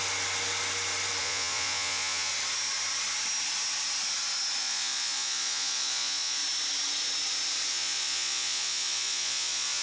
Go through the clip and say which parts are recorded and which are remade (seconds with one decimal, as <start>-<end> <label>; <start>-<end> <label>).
0.0-1.2 recorded; 1.2-2.3 remade; 2.3-4.6 recorded; 4.6-6.4 remade; 6.4-7.7 recorded; 7.7-9.8 remade